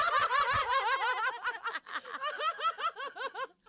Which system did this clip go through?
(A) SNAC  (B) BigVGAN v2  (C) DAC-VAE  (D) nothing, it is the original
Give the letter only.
D